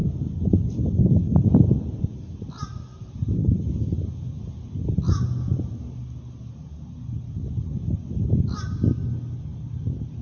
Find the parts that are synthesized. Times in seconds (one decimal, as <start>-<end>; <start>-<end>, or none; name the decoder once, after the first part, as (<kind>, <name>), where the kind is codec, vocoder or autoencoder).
3.0-3.7 (vocoder, BigVGAN v2)